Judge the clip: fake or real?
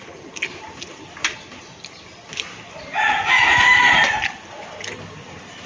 real